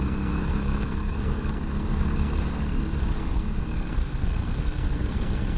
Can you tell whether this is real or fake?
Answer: fake